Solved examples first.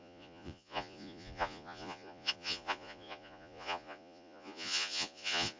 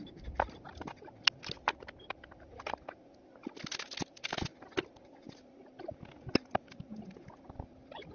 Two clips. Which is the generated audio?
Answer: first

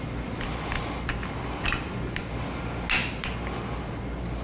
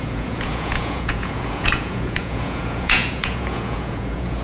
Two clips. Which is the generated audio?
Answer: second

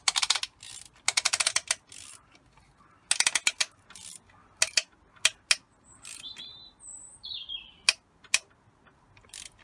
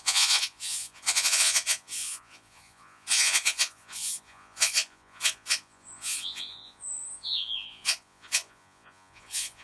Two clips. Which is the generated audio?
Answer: second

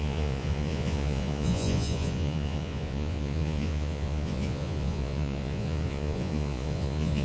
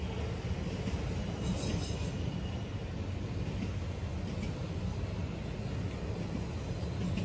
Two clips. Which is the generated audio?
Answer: first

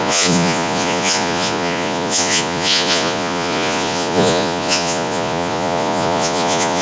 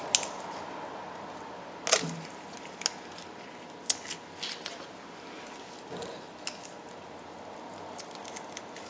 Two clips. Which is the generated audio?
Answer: first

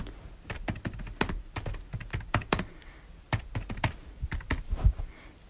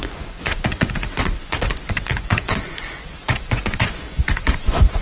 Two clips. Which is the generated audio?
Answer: second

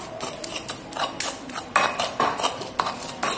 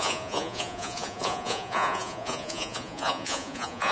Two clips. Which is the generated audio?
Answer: second